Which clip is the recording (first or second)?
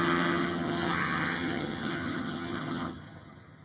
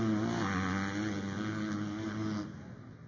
second